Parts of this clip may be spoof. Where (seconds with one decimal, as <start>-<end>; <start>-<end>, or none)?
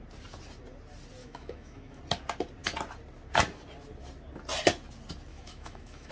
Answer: 1.2-2.0; 5.3-6.1